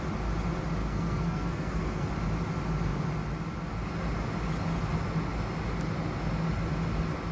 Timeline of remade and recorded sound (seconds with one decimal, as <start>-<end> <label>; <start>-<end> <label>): 0.0-0.8 recorded; 0.8-2.1 remade; 2.1-7.3 recorded